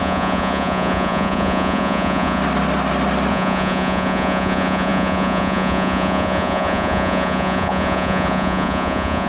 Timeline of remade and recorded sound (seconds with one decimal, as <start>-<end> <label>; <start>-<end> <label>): 0.0-2.4 remade; 2.4-3.3 recorded; 3.3-9.3 remade